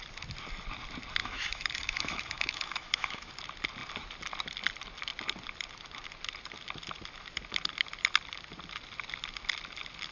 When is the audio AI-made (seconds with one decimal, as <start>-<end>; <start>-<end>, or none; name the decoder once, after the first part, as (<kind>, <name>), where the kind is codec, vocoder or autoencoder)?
1.2-3.3 (autoencoder, DAC-VAE)